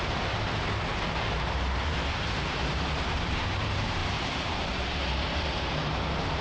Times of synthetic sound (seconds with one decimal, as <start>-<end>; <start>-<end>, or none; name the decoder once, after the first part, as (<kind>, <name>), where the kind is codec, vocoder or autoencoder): 0.0-6.4 (vocoder, BigVGAN v2)